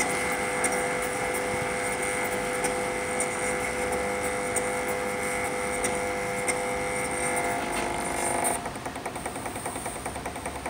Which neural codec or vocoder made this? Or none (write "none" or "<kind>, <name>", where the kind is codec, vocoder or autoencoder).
none